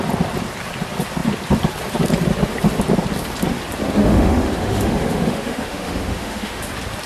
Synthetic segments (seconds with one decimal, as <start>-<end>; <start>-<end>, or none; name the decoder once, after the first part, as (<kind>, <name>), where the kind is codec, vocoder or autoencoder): 4.0-6.6 (autoencoder, DAC-VAE)